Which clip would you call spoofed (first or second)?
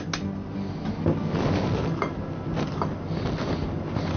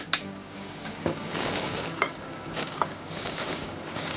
second